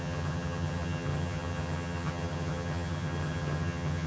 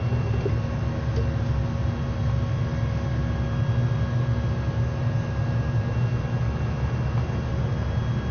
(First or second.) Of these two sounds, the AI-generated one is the first